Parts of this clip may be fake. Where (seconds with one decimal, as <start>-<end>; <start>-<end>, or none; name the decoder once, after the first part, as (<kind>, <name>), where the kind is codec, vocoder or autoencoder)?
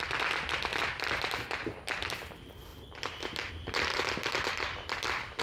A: 0.7-1.2 (vocoder, BigVGAN v2); 2.7-3.5; 3.9-5.4